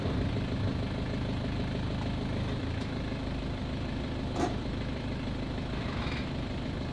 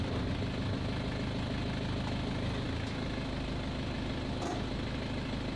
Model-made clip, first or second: first